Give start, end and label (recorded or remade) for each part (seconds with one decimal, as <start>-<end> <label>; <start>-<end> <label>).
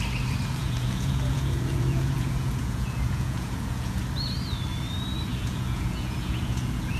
0.0-0.6 recorded; 0.6-4.0 remade; 4.0-5.3 recorded; 5.3-7.0 remade